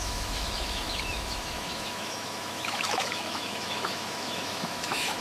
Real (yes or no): no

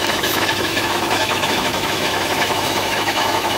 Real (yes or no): no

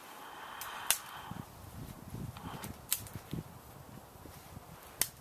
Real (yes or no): yes